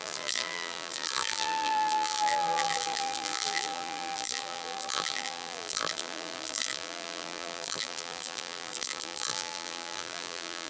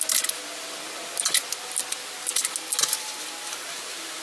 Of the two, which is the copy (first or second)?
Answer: first